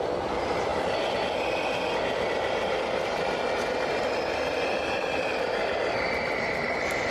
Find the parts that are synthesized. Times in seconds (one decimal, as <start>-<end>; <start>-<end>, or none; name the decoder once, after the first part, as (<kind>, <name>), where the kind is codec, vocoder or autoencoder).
none